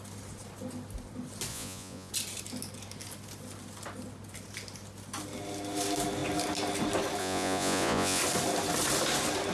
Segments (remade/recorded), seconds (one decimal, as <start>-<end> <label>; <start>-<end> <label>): 0.0-1.5 recorded; 1.5-2.1 remade; 2.1-7.2 recorded; 7.2-8.2 remade; 8.2-9.5 recorded